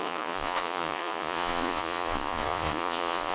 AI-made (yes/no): yes